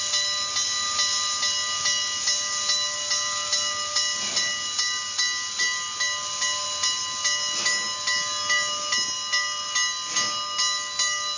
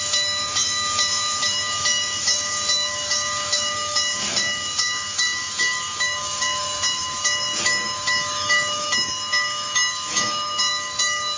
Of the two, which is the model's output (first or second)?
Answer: second